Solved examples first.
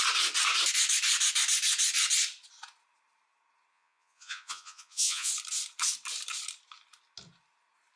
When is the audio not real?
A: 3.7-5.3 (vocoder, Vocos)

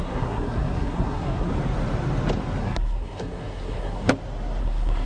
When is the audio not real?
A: 0.0-1.5 (codec, SNAC); 2.6-4.1; 4.6-5.1

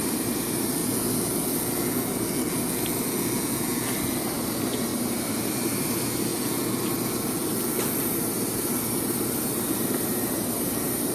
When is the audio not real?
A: 0.0-0.8 (vocoder, BigVGAN v2); 4.2-6.3; 8.2-11.1

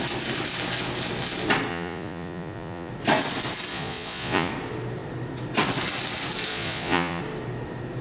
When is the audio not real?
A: 1.7-2.9 (vocoder, Vocos); 3.7-4.5; 6.5-7.2

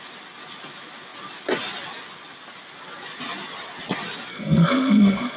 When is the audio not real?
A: 4.3-5.4 (codec, SNAC)